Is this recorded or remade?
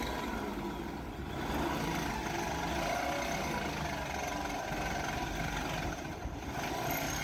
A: recorded